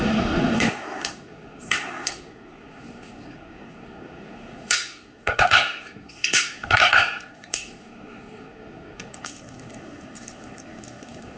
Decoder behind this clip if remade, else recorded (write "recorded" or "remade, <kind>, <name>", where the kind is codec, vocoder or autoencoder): remade, codec, SNAC